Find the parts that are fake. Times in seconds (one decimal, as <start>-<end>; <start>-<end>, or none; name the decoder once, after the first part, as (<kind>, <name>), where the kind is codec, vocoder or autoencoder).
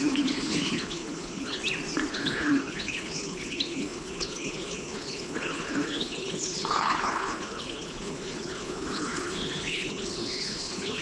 0.0-1.6 (codec, HILCodec); 2.1-11.0